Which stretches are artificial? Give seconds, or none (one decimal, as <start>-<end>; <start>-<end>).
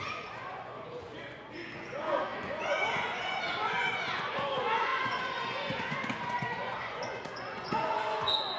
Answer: 0.0-8.6